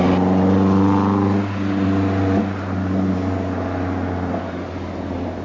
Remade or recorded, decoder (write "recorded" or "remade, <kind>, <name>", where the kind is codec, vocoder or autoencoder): recorded